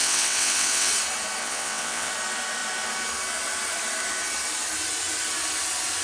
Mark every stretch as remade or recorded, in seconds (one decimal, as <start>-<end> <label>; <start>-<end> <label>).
0.0-0.9 remade; 0.9-1.4 recorded; 1.4-2.1 remade; 2.1-6.0 recorded